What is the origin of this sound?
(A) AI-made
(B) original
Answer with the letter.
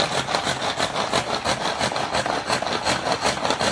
B